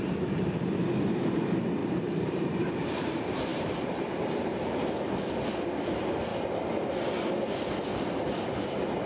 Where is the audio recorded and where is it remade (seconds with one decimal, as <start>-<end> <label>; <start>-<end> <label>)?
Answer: 0.0-1.8 recorded; 1.8-2.7 remade; 2.7-3.5 recorded; 3.5-4.9 remade; 4.9-9.1 recorded